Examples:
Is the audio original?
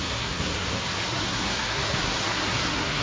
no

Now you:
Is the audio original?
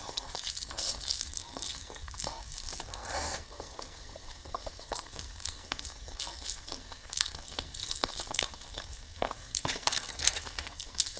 no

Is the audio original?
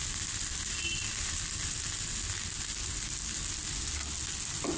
yes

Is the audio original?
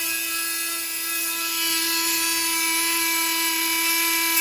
yes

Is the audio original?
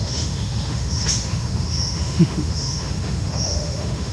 no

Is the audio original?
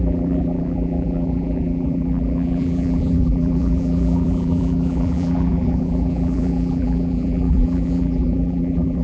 no